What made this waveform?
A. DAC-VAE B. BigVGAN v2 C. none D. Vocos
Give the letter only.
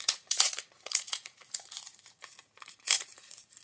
D